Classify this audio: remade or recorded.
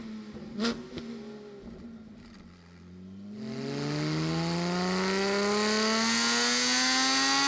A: recorded